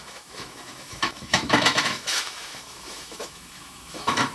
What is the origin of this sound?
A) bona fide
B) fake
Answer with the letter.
B